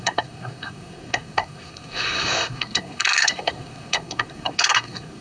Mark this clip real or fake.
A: fake